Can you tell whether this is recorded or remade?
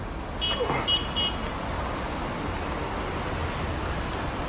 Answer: recorded